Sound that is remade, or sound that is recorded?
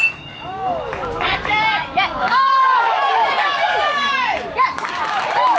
remade